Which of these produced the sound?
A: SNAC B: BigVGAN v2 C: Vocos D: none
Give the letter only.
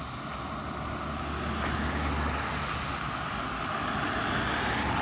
D